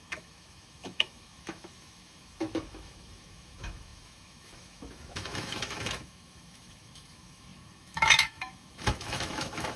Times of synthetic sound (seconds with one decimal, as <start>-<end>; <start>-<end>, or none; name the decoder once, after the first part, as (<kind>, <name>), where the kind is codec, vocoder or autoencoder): 0.0-9.8 (autoencoder, DAC-VAE)